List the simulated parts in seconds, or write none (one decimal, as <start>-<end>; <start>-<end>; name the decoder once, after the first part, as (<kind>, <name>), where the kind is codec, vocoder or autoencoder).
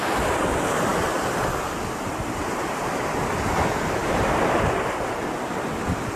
4.0-4.6 (vocoder, BigVGAN v2)